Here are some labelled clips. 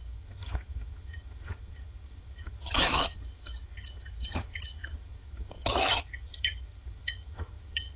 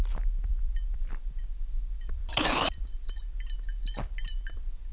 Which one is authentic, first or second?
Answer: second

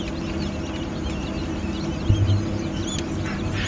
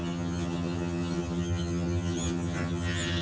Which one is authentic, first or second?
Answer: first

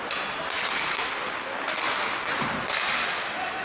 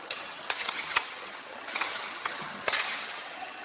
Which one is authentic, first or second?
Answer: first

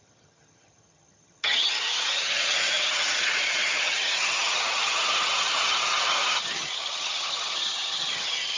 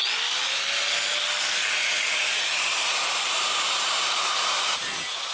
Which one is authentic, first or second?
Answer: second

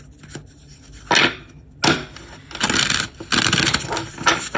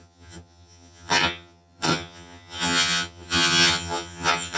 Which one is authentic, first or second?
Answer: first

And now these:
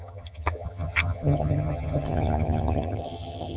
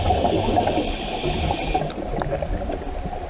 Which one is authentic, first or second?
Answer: second